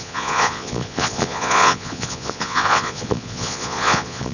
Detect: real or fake fake